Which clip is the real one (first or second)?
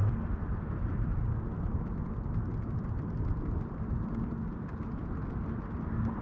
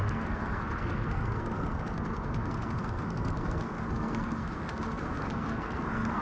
first